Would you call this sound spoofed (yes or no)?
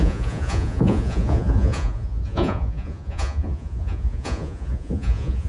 yes